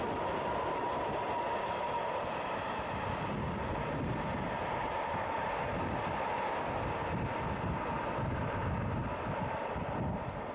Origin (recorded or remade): recorded